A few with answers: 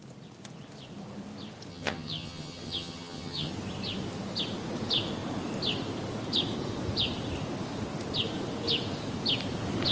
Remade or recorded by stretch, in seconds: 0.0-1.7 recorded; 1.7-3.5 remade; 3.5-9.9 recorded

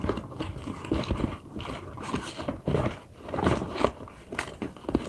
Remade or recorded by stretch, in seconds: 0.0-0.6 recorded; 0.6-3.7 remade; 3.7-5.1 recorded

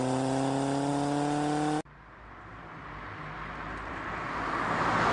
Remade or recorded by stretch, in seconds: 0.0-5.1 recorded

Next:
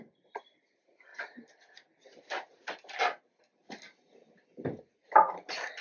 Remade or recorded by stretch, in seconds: 0.0-1.1 remade; 1.1-1.9 recorded; 1.9-3.5 remade; 3.5-5.8 recorded

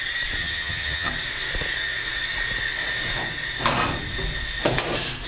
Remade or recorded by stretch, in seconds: 0.0-0.4 recorded; 0.4-1.1 remade; 1.1-5.3 recorded